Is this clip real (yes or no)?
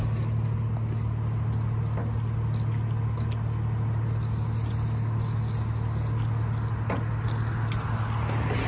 yes